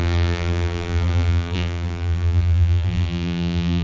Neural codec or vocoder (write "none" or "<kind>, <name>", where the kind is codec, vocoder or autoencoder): vocoder, BigVGAN v2